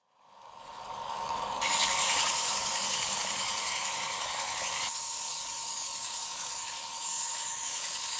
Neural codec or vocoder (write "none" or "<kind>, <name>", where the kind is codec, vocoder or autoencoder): codec, DAC